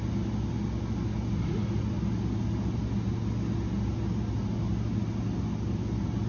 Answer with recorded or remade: recorded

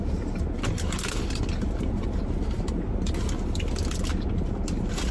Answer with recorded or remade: recorded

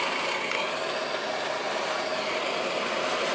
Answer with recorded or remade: recorded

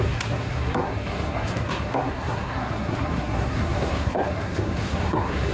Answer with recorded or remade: remade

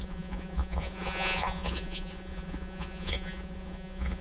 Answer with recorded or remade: remade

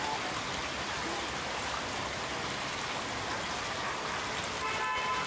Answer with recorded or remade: recorded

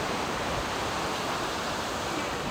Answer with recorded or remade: recorded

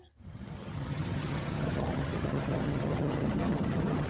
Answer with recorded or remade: remade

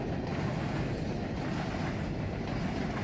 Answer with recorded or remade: recorded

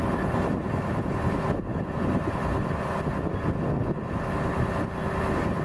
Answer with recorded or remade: recorded